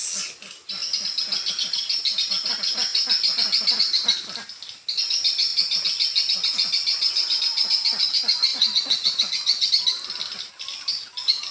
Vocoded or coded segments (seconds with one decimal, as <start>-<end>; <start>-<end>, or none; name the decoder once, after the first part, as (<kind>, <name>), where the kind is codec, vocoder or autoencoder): 8.5-9.7 (vocoder, Vocos)